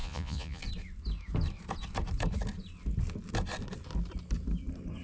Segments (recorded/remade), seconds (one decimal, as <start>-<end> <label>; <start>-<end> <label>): 0.0-0.6 remade; 0.6-5.0 recorded